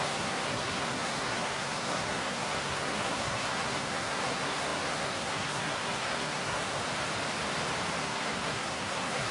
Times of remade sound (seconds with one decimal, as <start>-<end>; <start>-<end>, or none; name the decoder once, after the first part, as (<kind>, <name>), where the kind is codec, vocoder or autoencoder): 0.0-6.8 (codec, SNAC); 8.0-9.3

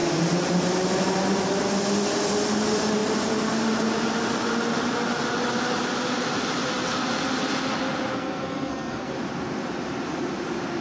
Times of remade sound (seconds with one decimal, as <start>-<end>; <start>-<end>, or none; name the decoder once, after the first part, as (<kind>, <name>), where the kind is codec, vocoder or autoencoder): 8.1-9.1 (codec, SNAC)

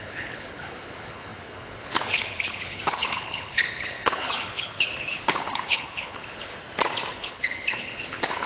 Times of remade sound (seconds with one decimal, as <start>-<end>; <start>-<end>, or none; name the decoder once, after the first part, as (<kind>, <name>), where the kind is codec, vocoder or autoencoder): 0.0-6.5 (codec, HILCodec); 7.1-8.5

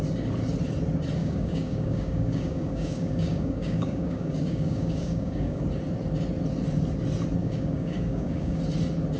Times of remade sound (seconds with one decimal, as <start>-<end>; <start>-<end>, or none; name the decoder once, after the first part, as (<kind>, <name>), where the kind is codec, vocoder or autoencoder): 1.2-5.6 (codec, DAC); 7.4-8.6

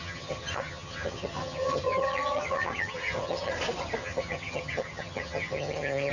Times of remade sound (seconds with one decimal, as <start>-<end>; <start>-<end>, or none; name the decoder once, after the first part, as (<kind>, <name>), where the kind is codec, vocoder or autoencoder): 0.0-3.5 (vocoder, HiFi-GAN); 4.0-6.1

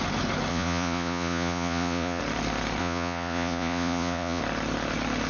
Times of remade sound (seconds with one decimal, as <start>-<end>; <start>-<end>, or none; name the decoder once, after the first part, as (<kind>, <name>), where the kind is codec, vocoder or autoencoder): 0.5-2.2 (vocoder, Vocos); 2.8-4.4

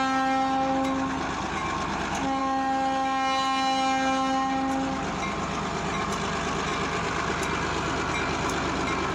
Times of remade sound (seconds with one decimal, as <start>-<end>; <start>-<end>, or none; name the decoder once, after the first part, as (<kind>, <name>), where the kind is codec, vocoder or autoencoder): none

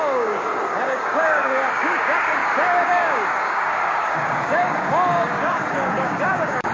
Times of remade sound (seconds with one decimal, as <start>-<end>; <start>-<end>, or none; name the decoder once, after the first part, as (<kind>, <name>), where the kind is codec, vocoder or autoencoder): 0.0-6.7 (codec, DAC)